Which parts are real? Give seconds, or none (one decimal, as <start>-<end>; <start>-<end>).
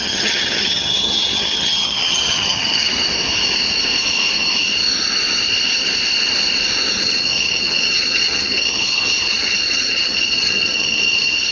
2.9-7.0